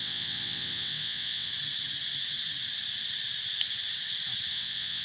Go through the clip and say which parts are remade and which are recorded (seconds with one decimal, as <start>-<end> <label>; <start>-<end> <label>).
0.0-1.5 remade; 1.5-4.5 recorded; 4.5-5.0 remade